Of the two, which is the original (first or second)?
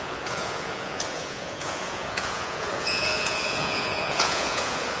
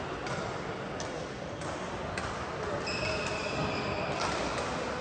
second